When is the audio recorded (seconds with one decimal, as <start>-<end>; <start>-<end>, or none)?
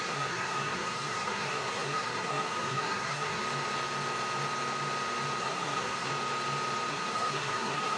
3.4-5.4; 6.1-6.9